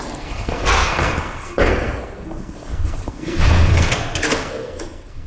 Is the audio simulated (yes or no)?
yes